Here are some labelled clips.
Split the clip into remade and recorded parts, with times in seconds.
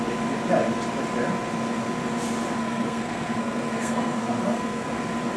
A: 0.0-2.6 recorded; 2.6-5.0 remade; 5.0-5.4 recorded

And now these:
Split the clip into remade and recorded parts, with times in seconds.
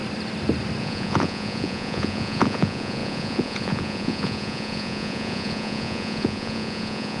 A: 0.0-0.8 recorded; 0.8-7.2 remade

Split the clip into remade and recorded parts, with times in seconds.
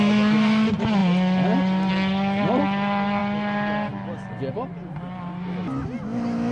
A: 0.0-6.5 recorded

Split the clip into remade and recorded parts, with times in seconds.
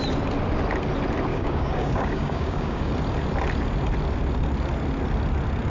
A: 0.0-1.3 recorded; 1.3-2.9 remade; 2.9-5.7 recorded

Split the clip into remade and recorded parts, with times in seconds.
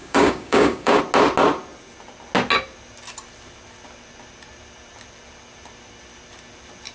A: 0.0-1.0 remade; 1.0-6.9 recorded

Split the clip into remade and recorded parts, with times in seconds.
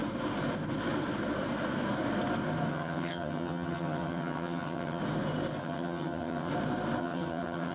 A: 0.0-2.7 recorded; 2.7-5.0 remade; 5.0-5.6 recorded; 5.6-6.5 remade; 6.5-7.0 recorded; 7.0-7.7 remade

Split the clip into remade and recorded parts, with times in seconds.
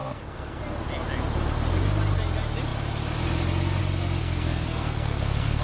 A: 0.0-0.6 remade; 0.6-4.2 recorded; 4.2-5.6 remade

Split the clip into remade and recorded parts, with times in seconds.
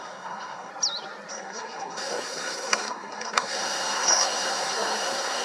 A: 0.0-0.7 remade; 0.7-1.3 recorded; 1.3-5.4 remade